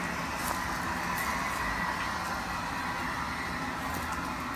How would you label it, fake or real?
real